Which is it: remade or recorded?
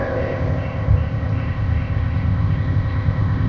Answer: remade